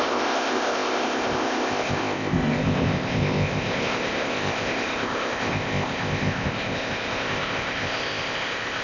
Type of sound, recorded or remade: remade